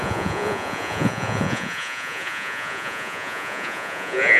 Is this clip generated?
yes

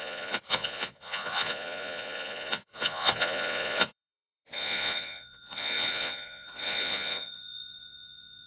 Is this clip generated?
yes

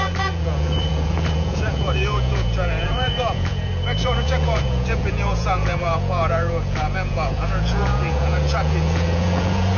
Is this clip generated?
yes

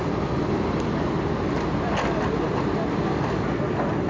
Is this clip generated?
no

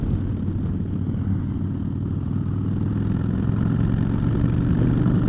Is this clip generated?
no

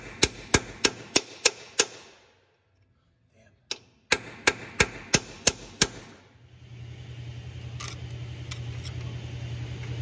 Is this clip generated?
no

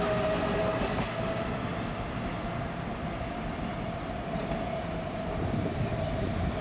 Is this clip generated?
no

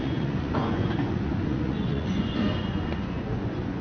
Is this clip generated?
yes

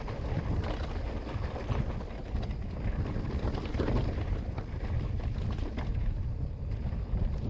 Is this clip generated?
no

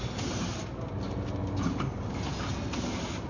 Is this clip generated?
no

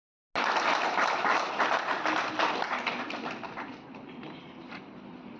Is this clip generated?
no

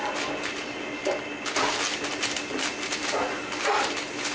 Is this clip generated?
no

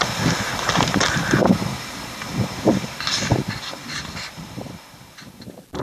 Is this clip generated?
no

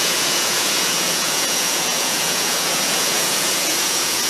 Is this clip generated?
yes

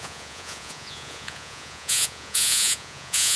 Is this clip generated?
yes